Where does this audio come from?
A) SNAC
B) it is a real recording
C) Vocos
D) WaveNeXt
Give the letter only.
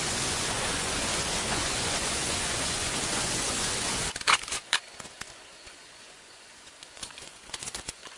C